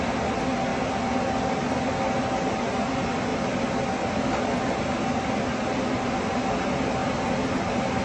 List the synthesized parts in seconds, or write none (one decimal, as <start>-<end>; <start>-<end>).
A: none